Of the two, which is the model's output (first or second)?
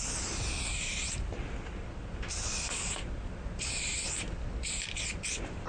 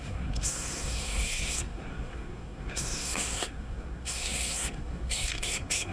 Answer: second